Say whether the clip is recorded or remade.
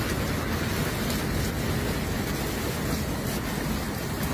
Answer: recorded